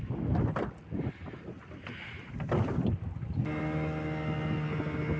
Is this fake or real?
real